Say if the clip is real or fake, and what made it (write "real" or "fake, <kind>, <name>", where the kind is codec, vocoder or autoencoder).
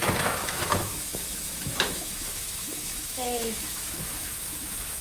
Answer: fake, autoencoder, DAC-VAE